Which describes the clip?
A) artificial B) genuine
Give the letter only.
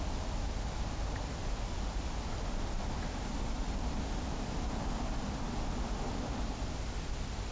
B